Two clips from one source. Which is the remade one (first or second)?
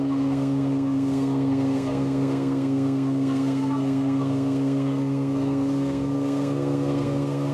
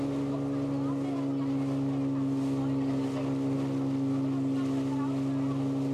first